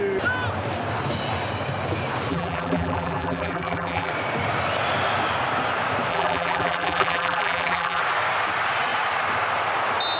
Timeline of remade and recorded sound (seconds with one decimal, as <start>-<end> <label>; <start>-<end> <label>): 0.0-2.3 recorded; 2.3-4.1 remade; 4.1-6.1 recorded; 6.1-8.0 remade; 8.0-10.2 recorded

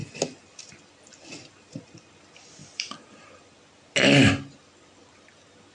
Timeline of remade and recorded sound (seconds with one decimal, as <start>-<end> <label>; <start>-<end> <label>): 0.0-2.6 recorded; 2.6-3.3 remade; 3.3-5.7 recorded